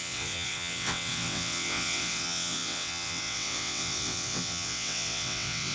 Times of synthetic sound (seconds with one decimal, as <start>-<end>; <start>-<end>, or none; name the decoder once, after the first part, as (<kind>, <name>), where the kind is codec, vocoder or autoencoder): 0.0-5.7 (vocoder, WaveNeXt)